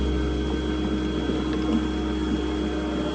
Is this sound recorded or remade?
recorded